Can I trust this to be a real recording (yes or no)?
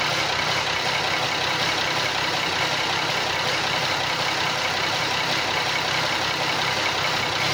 yes